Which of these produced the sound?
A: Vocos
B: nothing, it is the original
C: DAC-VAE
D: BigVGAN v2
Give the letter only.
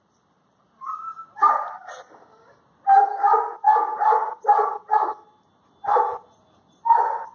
B